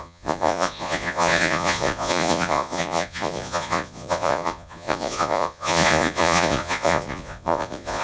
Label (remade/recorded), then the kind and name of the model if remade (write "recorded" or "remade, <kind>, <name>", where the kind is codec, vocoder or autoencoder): remade, vocoder, Vocos